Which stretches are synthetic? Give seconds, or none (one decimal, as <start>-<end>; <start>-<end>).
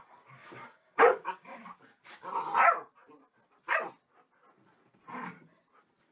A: 0.4-1.6